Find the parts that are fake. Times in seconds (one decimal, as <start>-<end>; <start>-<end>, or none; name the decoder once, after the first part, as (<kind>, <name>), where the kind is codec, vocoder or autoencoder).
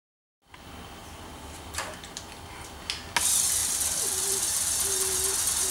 1.0-2.8 (vocoder, BigVGAN v2); 3.6-4.9